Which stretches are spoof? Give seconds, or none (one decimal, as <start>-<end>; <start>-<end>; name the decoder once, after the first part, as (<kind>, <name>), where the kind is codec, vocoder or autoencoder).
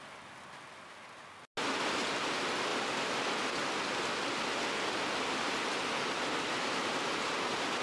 none